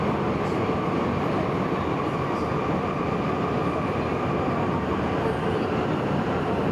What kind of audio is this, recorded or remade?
recorded